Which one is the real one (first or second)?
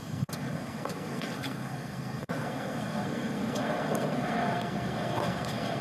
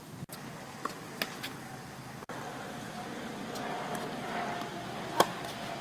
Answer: second